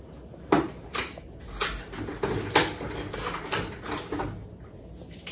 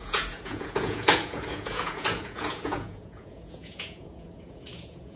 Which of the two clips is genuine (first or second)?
first